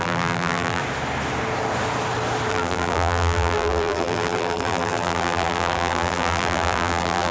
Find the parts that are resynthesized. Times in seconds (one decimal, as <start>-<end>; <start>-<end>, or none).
0.0-0.8; 2.5-7.3